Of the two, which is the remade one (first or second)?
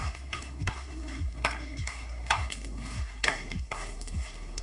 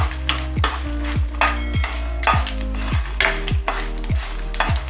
first